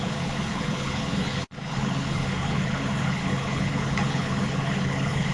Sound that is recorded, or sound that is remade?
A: remade